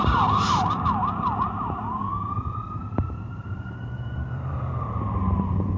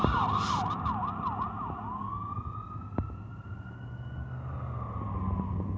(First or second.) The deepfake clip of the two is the first